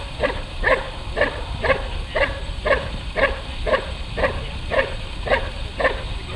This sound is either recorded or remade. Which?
remade